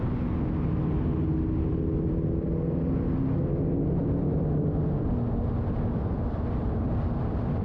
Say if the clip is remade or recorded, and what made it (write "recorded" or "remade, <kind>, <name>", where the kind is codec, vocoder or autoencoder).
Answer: recorded